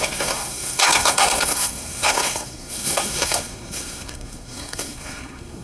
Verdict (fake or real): fake